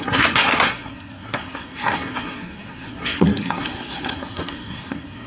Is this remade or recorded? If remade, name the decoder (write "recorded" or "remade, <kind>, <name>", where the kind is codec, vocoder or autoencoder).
remade, codec, SNAC